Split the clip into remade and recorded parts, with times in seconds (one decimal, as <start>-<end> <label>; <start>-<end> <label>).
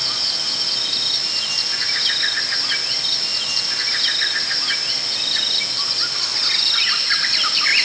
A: 0.0-7.8 recorded